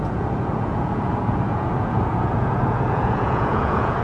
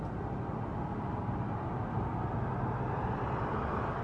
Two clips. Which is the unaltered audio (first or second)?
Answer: second